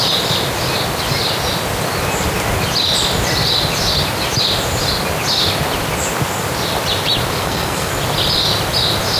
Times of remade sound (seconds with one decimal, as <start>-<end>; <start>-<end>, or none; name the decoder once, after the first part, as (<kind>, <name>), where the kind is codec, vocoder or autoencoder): 7.4-7.9 (codec, SNAC)